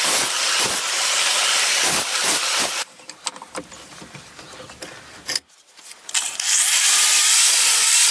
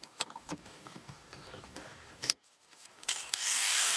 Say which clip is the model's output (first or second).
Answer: second